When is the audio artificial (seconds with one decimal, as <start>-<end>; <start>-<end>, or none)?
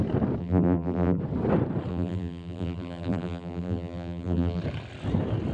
0.4-1.2; 1.9-4.6